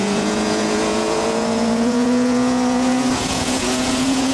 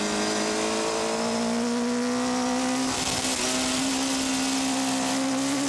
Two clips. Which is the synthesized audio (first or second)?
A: first